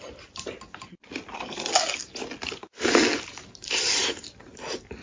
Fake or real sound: real